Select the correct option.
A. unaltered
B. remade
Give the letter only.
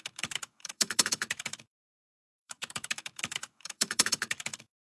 B